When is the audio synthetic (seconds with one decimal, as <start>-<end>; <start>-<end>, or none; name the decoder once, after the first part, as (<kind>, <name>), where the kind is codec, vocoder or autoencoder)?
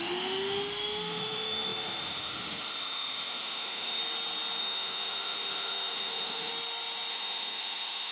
0.0-4.0 (autoencoder, DAC-VAE); 4.6-6.5; 7.1-8.1